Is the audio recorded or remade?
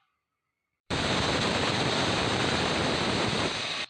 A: remade